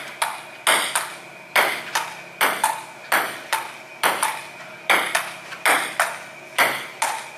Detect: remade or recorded recorded